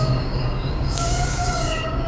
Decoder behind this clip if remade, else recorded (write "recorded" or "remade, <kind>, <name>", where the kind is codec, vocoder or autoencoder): remade, codec, DAC